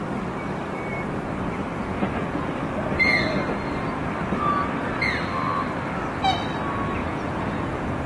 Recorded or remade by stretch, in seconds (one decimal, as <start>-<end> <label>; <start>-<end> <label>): 0.0-1.7 recorded; 1.7-2.5 remade; 2.5-7.0 recorded; 7.0-8.1 remade